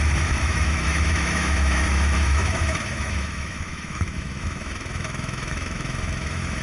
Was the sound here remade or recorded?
remade